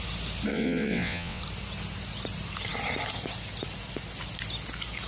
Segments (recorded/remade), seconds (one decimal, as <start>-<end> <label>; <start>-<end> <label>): 0.0-0.5 recorded; 0.5-1.4 remade; 1.4-5.1 recorded